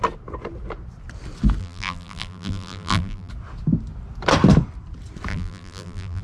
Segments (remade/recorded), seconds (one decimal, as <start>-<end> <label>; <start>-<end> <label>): 0.0-1.6 recorded; 1.6-3.3 remade; 3.3-5.3 recorded; 5.3-6.2 remade